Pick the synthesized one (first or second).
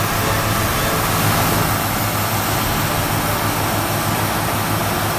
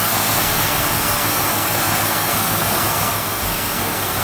second